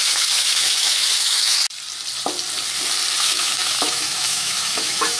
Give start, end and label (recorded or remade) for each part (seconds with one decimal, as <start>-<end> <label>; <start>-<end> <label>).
0.0-1.6 remade; 1.6-3.2 recorded; 3.2-5.2 remade